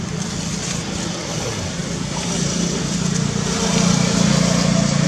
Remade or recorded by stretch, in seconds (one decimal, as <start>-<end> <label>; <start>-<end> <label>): 0.0-5.1 recorded

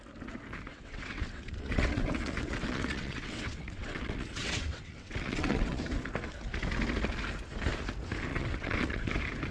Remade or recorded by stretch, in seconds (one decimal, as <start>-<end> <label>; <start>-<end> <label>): 0.0-0.7 recorded; 0.7-5.8 remade; 5.8-8.3 recorded; 8.3-9.1 remade; 9.1-9.5 recorded

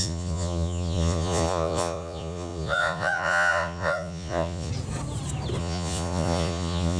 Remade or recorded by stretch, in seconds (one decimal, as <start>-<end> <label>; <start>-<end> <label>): 0.0-4.7 remade; 4.7-5.6 recorded; 5.6-7.0 remade

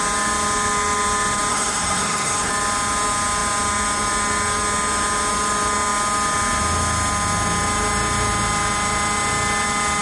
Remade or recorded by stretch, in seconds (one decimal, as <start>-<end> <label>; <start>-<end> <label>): 0.0-1.5 recorded; 1.5-2.5 remade; 2.5-10.0 recorded

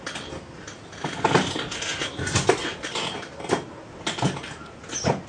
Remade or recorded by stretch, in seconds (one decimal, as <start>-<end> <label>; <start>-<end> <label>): 0.0-5.3 recorded

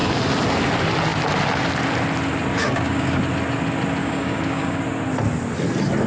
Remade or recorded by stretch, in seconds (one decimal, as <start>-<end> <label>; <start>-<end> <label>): 0.0-2.5 recorded; 2.5-3.2 remade; 3.2-4.0 recorded; 4.0-4.8 remade; 4.8-6.1 recorded

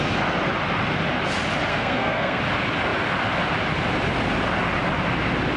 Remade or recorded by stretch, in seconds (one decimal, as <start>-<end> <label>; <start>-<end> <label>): 0.0-1.7 recorded; 1.7-2.4 remade; 2.4-5.6 recorded

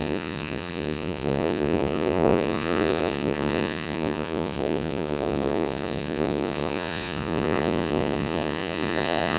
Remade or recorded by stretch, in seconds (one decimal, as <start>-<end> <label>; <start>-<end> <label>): 0.0-9.4 remade